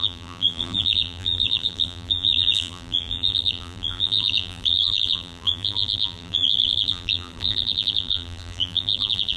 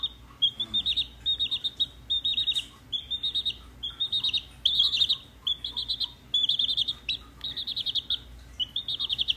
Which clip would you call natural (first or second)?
second